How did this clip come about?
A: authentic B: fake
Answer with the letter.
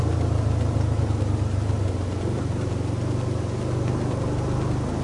A